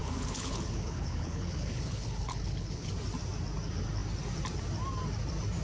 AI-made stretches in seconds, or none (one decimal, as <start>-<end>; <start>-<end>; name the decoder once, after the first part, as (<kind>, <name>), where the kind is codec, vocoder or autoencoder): 0.0-2.9 (codec, HILCodec)